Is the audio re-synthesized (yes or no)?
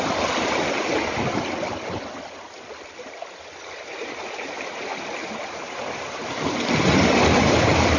no